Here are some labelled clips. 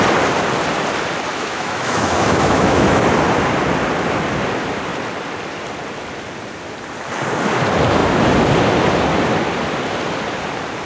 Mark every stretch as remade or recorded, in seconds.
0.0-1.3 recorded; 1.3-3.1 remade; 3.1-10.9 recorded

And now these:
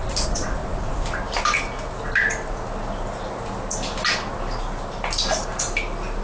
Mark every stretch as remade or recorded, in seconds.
0.0-6.2 recorded

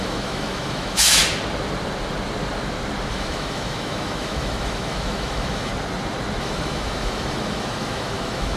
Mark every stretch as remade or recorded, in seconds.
0.0-1.2 remade; 1.2-3.1 recorded; 3.1-5.7 remade; 5.7-6.4 recorded; 6.4-8.6 remade

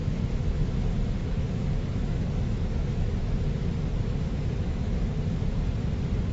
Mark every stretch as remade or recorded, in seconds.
0.0-0.7 remade; 0.7-1.2 recorded; 1.2-5.0 remade; 5.0-6.3 recorded

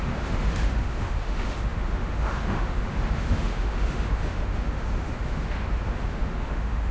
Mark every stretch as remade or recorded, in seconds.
0.0-6.9 remade

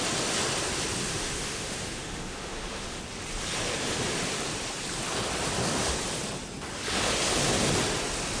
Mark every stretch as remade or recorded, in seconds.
0.0-1.1 recorded; 1.1-3.0 remade; 3.0-8.4 recorded

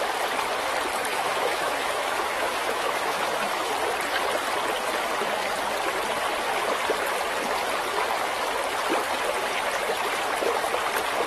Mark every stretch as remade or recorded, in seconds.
0.0-1.1 recorded; 1.1-3.7 remade; 3.7-11.3 recorded

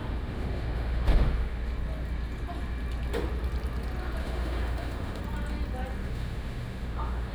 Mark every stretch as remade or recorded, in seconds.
0.0-1.7 remade; 1.7-4.2 recorded; 4.2-5.2 remade; 5.2-6.0 recorded; 6.0-7.3 remade